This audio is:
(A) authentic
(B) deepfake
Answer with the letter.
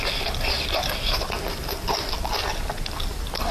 A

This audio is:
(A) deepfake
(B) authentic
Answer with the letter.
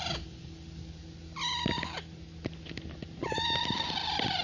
B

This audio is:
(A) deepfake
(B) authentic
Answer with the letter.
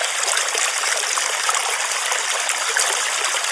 B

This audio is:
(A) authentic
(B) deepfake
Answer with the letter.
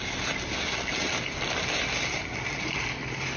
A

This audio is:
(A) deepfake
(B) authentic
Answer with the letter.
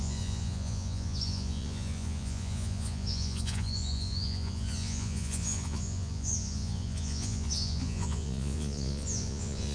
A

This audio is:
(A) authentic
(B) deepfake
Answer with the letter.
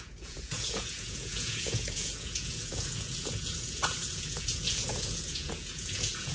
B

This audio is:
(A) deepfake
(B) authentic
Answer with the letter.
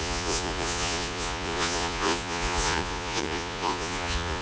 A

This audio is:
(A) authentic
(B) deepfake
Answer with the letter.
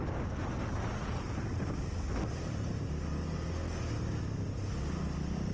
A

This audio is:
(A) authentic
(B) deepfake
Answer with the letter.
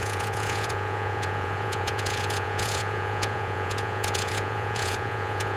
B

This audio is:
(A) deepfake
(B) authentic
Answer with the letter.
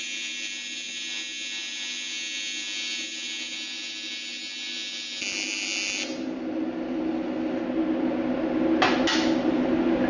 B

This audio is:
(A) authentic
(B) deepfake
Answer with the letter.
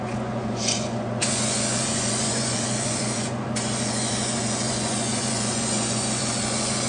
B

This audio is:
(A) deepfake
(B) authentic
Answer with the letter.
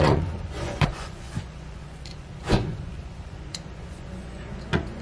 A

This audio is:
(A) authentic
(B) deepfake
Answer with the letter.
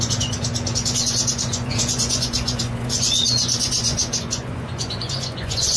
B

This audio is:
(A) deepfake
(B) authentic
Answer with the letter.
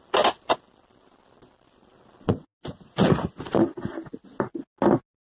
B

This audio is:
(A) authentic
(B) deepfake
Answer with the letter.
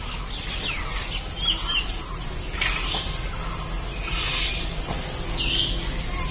A